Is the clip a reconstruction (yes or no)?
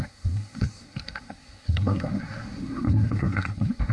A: yes